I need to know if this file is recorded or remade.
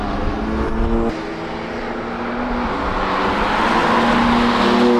recorded